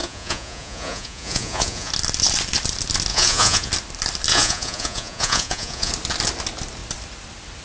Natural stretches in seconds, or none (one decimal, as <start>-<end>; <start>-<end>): 1.9-3.1; 3.7-4.3; 5.9-7.6